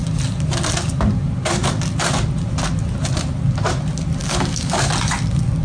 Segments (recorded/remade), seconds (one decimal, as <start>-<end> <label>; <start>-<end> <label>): 0.0-4.2 recorded; 4.2-4.9 remade; 4.9-5.6 recorded